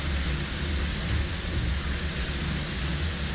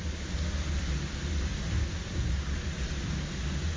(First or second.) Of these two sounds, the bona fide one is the first